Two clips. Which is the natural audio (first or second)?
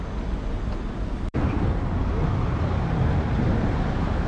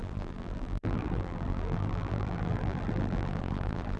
first